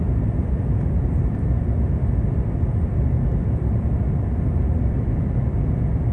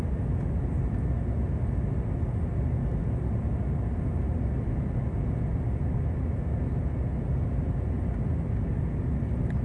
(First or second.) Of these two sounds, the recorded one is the second